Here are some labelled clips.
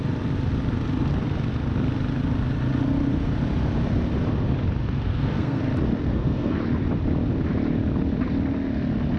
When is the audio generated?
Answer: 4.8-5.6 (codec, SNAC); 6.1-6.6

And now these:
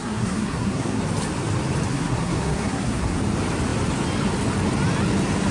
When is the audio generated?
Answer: 0.0-1.0 (codec, SNAC); 1.9-3.2